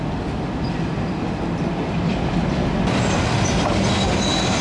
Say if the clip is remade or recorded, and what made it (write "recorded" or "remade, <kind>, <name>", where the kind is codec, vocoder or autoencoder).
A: recorded